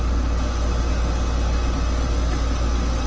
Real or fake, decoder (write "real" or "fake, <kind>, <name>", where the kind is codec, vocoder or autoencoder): real